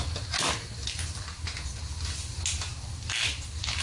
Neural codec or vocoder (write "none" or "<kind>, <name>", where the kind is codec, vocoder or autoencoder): none